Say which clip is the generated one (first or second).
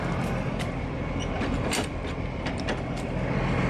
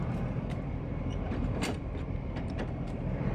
second